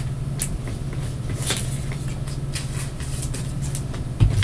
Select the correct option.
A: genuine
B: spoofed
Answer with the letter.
A